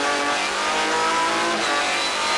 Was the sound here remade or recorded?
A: recorded